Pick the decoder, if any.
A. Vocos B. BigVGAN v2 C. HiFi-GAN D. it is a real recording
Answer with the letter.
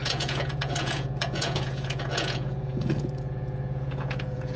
A